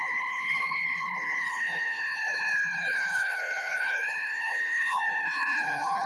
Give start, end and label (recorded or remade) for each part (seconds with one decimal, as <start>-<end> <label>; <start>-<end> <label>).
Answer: 0.0-6.1 remade